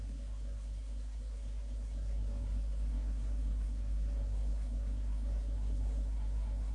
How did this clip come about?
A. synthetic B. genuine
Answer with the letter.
A